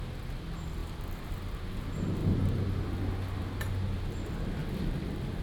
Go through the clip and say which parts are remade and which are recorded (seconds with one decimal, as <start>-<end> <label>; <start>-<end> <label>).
0.0-4.6 recorded; 4.6-5.4 remade